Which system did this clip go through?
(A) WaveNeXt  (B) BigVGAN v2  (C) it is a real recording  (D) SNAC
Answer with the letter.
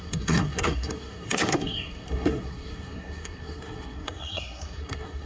D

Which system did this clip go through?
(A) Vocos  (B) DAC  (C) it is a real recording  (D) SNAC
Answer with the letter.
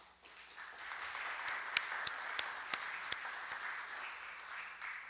C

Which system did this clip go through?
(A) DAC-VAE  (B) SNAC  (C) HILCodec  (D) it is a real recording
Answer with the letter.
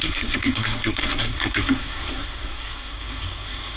B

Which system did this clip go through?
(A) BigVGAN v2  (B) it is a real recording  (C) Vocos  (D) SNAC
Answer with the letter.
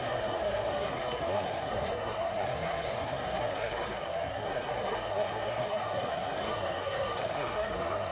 D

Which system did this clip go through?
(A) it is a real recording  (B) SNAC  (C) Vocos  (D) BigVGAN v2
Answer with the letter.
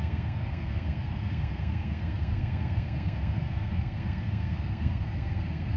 B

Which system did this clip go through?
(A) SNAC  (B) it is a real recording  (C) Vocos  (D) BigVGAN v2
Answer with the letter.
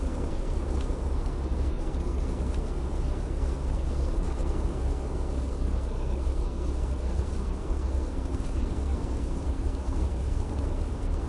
A